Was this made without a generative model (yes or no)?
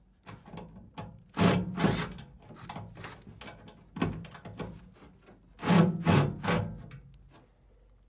yes